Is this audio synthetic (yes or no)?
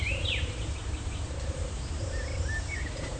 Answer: yes